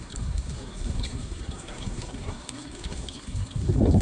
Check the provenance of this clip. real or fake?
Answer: fake